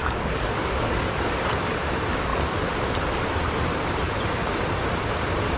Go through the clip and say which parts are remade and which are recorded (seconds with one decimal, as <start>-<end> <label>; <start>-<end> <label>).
0.0-1.5 remade; 1.5-5.6 recorded